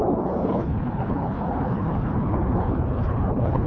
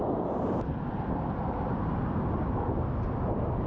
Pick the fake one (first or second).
first